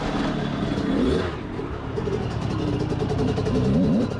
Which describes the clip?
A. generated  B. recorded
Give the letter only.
B